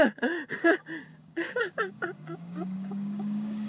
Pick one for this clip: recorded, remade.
remade